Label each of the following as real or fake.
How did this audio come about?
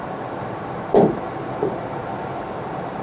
fake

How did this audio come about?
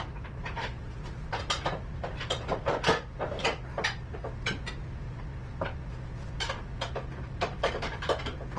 fake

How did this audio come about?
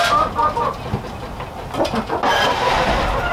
real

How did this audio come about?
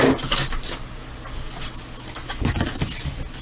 real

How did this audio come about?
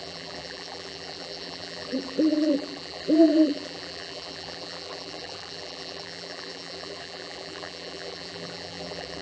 fake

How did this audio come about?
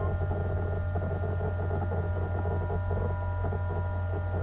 real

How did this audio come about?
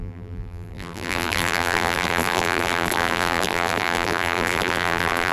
fake